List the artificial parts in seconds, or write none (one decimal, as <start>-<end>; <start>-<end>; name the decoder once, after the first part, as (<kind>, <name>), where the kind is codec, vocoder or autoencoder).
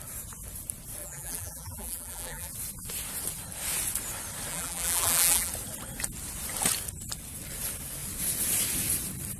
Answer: 1.0-2.5 (vocoder, BigVGAN v2); 4.5-5.5